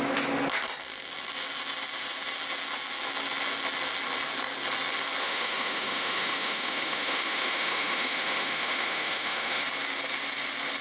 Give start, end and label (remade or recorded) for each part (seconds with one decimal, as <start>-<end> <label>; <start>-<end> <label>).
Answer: 0.0-5.2 recorded; 5.2-9.6 remade; 9.6-10.8 recorded